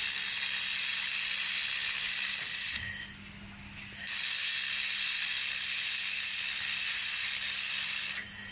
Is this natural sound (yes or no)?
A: yes